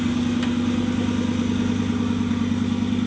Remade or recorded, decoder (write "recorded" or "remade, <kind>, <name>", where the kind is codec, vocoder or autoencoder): recorded